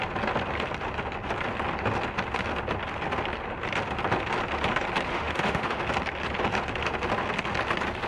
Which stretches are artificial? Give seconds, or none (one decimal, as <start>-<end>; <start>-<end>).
5.1-5.8